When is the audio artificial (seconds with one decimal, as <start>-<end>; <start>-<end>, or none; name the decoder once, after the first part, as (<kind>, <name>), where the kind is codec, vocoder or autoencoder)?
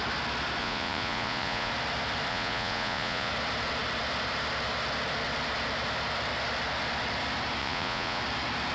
0.6-1.7 (vocoder, Vocos); 2.3-3.3; 7.6-8.2